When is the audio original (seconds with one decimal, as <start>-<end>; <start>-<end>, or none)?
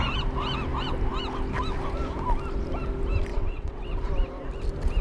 0.0-3.3; 4.1-5.0